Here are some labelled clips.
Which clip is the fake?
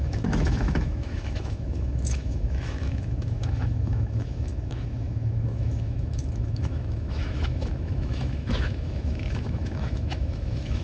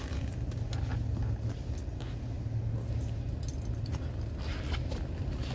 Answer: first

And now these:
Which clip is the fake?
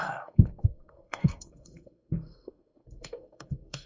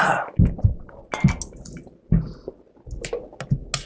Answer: first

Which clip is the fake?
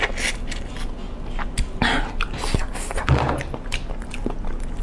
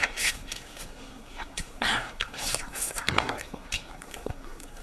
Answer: second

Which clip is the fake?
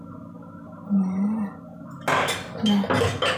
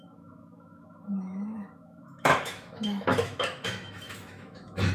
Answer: second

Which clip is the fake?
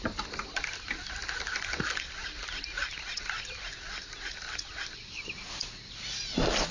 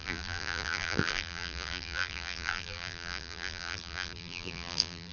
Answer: second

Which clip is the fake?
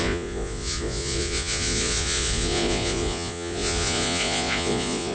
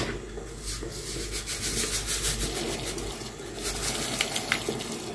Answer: first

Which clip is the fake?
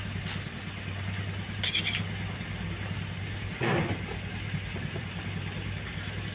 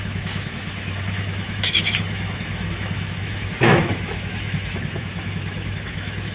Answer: second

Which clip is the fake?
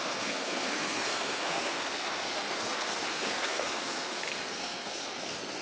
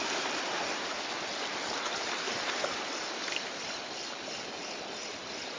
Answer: first